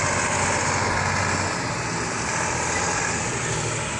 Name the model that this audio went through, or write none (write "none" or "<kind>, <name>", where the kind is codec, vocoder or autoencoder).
none